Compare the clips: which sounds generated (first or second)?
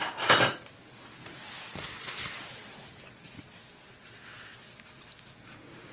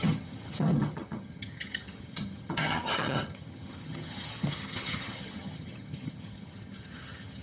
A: second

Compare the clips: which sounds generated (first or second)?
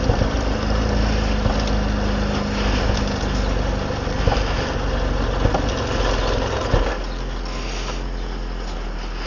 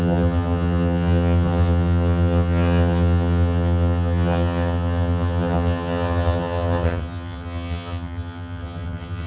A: second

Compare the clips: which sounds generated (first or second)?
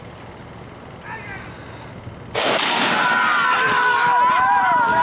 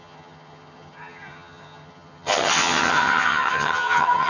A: second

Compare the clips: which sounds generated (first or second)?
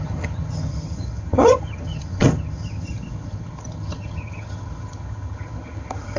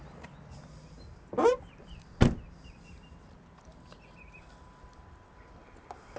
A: first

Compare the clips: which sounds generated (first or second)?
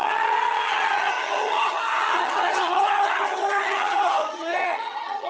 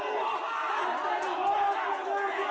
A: first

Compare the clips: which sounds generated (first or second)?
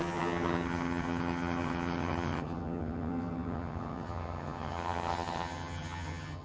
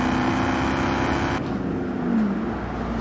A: first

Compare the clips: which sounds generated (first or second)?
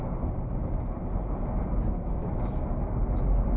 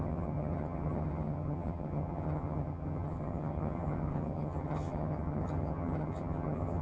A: second